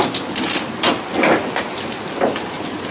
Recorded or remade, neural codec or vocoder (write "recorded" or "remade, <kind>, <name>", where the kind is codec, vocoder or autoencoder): recorded